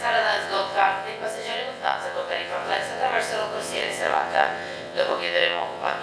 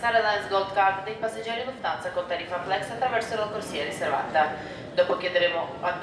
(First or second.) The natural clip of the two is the second